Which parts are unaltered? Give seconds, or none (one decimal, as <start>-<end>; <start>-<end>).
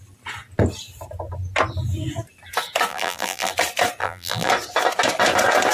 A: 0.0-2.9; 3.5-4.0; 4.5-5.7